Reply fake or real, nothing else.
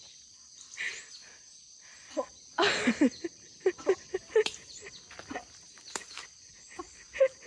real